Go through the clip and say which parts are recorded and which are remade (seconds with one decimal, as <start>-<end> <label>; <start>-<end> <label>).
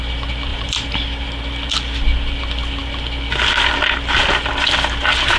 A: 0.0-0.5 recorded; 0.5-1.0 remade; 1.0-5.4 recorded